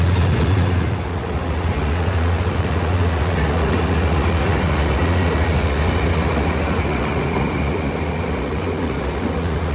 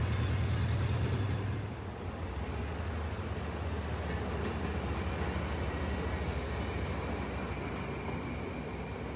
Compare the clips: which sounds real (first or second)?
second